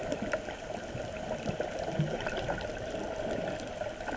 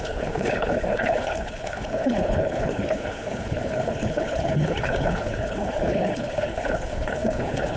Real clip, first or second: first